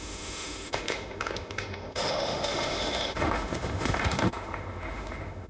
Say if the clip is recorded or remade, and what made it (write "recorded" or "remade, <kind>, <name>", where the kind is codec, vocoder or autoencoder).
remade, autoencoder, DAC-VAE